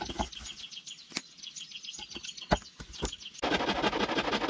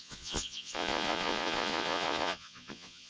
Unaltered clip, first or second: first